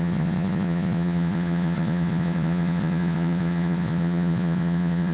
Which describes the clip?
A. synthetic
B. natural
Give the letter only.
A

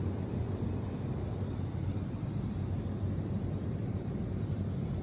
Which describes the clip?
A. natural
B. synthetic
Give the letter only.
B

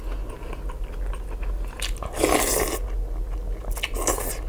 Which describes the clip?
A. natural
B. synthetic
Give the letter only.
A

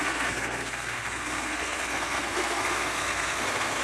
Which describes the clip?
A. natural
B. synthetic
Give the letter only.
B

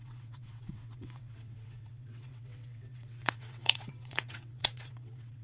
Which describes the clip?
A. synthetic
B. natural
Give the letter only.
A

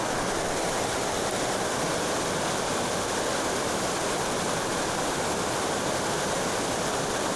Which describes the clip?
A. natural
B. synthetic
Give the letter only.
A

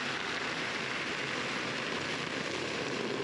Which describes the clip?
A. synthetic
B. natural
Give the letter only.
A